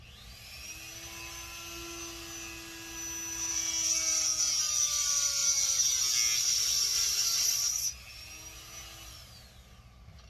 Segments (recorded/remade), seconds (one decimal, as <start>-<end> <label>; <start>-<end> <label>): 0.0-10.3 recorded